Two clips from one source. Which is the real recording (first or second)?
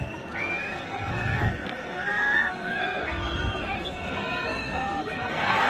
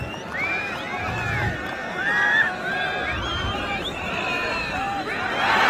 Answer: second